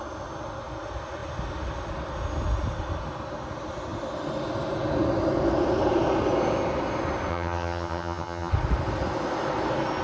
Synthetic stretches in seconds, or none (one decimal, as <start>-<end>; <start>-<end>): 7.3-8.5